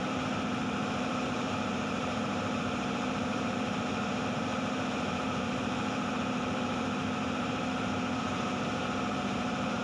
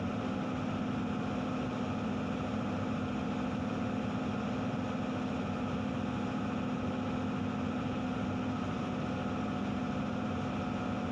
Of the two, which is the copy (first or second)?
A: first